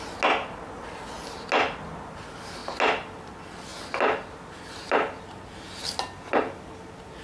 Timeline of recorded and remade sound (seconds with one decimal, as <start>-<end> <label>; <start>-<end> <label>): 0.0-7.2 recorded